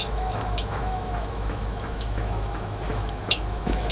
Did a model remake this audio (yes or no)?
yes